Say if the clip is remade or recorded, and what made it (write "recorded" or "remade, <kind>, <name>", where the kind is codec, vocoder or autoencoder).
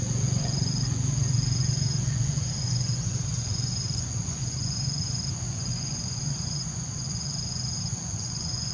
remade, vocoder, Vocos